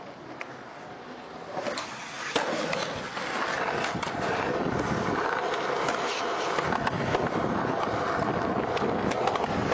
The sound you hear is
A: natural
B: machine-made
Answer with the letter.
A